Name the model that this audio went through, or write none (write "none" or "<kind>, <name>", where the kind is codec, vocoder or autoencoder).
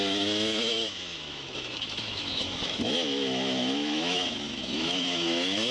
autoencoder, DAC-VAE